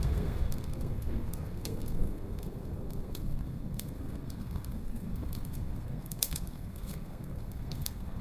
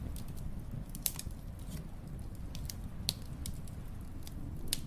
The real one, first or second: second